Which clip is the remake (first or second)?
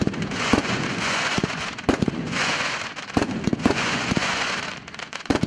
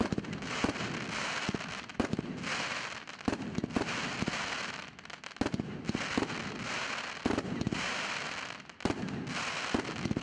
first